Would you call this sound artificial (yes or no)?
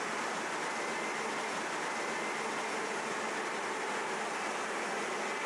no